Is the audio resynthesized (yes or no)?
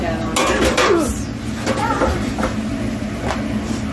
no